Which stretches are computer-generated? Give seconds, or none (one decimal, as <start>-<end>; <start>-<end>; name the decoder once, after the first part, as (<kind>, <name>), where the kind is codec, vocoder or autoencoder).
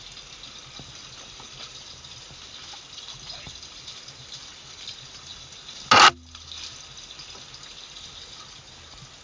none